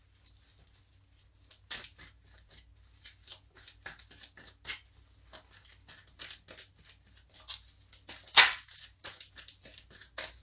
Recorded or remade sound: recorded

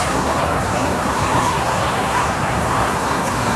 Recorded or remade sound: remade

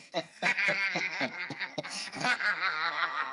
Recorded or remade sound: remade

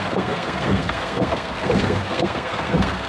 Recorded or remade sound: remade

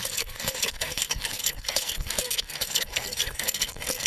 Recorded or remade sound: remade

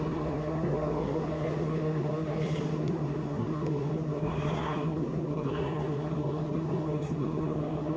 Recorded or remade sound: remade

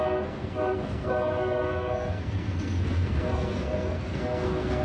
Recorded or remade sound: remade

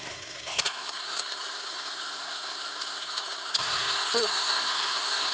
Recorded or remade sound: remade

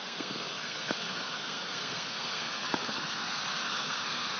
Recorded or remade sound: remade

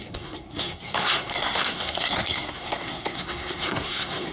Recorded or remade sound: remade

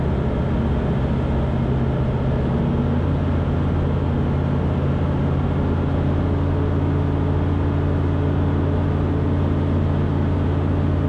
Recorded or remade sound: recorded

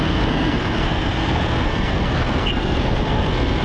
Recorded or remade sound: remade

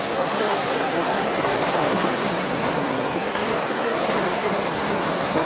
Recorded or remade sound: remade